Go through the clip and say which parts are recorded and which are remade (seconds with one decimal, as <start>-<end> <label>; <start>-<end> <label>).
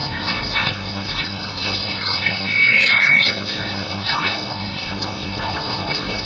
0.0-6.3 remade